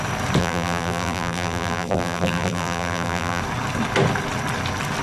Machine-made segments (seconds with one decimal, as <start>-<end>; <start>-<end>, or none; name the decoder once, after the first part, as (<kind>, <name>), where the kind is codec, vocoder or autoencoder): 0.4-3.4 (vocoder, BigVGAN v2)